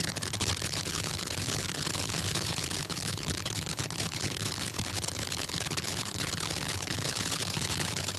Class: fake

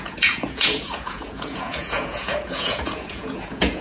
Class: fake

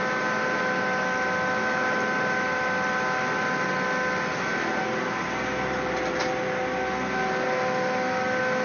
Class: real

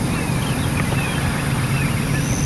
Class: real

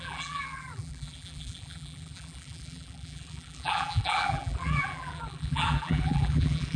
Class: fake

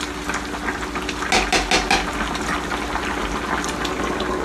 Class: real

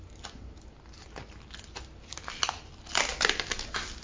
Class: real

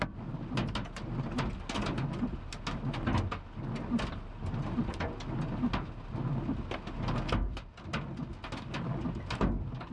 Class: real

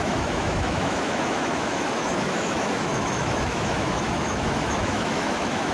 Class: fake